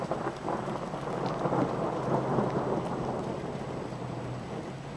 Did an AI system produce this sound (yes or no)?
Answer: no